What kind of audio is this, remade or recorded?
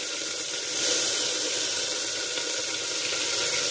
recorded